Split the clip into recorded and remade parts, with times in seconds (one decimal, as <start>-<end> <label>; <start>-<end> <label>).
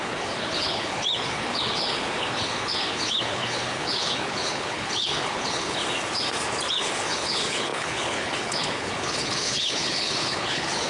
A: 0.0-5.8 remade; 5.8-6.7 recorded; 6.7-10.9 remade